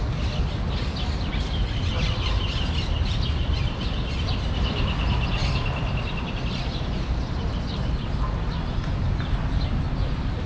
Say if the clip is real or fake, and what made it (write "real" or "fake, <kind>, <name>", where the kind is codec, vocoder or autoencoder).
real